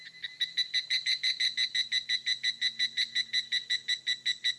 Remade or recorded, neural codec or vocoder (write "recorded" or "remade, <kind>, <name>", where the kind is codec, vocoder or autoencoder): recorded